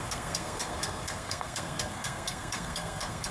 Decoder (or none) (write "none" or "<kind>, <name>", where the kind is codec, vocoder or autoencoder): codec, SNAC